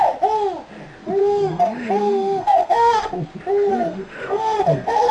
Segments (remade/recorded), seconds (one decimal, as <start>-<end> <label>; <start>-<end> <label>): 0.0-1.2 recorded; 1.2-3.0 remade; 3.0-3.7 recorded; 3.7-5.1 remade